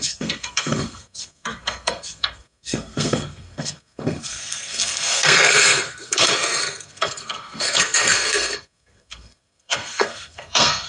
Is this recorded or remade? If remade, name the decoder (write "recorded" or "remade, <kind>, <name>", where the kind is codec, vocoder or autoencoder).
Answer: remade, codec, SNAC